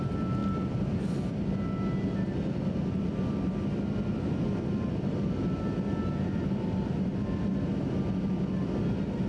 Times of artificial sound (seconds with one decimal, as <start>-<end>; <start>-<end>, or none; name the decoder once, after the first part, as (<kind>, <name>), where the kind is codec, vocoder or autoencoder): none